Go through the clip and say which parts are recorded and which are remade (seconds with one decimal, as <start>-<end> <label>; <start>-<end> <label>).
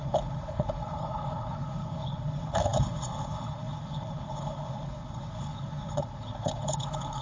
0.0-7.2 remade